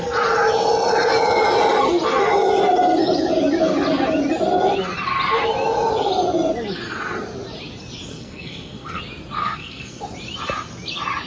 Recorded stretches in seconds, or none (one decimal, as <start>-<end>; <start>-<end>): 0.0-8.1; 9.0-9.4; 10.0-11.3